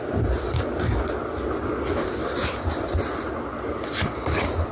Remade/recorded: recorded